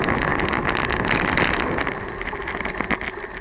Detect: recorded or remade recorded